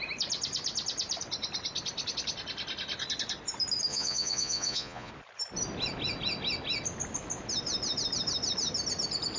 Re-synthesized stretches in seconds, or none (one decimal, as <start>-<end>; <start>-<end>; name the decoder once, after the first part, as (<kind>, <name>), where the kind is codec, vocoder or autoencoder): 3.9-5.1 (vocoder, Vocos)